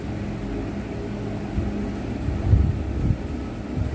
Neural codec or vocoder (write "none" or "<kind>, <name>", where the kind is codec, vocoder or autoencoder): none